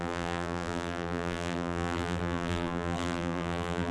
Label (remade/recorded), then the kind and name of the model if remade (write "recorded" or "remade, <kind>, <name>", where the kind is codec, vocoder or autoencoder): remade, vocoder, BigVGAN v2